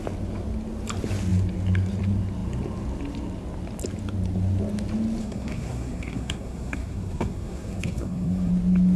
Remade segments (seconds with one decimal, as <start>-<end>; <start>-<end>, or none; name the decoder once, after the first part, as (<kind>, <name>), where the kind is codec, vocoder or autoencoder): 5.2-8.5 (codec, SNAC)